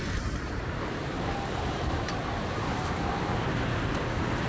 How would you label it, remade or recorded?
remade